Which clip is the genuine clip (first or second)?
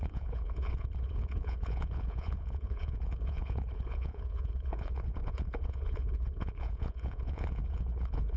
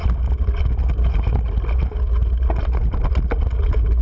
second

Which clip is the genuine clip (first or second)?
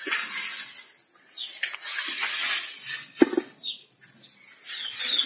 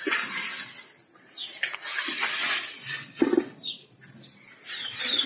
first